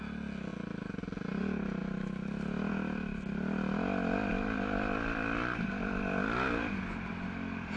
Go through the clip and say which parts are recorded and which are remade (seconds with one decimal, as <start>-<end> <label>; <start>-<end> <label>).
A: 0.0-1.8 recorded; 1.8-3.2 remade; 3.2-4.3 recorded; 4.3-7.8 remade